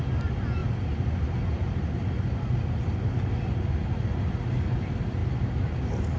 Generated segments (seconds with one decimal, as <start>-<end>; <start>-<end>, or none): none